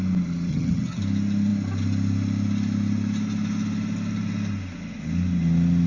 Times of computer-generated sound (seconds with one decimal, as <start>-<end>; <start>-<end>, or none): 0.5-1.0